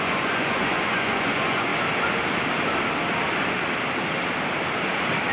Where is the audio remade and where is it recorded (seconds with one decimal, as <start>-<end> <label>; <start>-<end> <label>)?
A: 0.0-1.7 remade; 1.7-5.3 recorded